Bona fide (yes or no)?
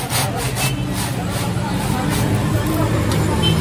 yes